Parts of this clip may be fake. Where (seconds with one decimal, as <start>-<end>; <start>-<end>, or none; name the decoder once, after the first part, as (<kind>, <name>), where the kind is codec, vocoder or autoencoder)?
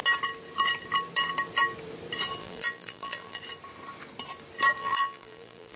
2.4-3.4 (vocoder, BigVGAN v2); 4.8-5.8